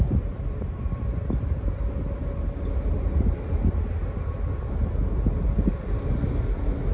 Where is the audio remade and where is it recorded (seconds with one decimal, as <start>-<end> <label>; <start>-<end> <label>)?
0.0-6.9 recorded